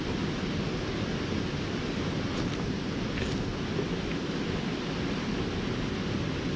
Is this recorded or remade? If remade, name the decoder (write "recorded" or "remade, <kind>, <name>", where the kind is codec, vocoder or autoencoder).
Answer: recorded